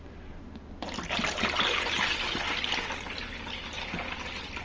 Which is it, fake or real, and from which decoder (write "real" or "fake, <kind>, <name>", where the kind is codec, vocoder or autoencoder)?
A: real